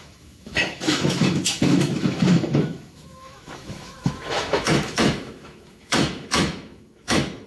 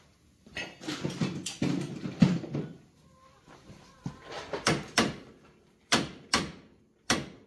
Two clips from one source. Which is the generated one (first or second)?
first